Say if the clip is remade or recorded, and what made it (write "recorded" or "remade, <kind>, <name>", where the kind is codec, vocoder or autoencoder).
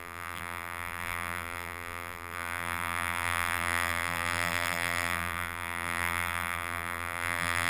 remade, vocoder, BigVGAN v2